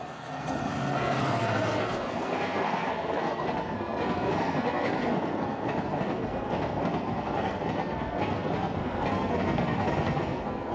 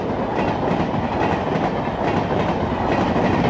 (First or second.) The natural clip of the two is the second